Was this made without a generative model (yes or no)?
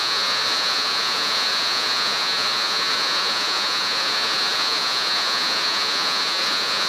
no